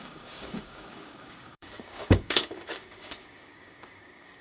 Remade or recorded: remade